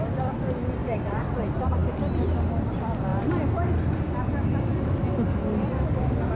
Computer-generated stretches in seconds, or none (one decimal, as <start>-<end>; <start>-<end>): 0.8-1.3